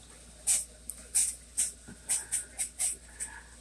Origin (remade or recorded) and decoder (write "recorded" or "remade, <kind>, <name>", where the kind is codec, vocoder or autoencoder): recorded